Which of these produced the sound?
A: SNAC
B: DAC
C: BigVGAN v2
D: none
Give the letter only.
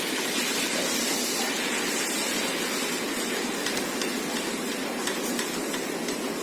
D